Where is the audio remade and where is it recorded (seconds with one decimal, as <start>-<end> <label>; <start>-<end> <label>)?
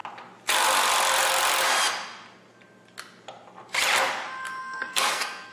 0.0-4.6 recorded; 4.6-5.5 remade